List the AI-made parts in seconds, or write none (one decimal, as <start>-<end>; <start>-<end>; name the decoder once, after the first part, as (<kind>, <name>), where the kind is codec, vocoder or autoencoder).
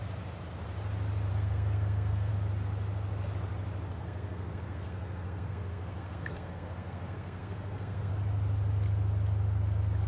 1.3-2.3 (codec, SNAC); 4.0-8.1